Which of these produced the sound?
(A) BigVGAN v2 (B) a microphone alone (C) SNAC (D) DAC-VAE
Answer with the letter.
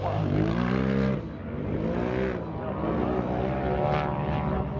B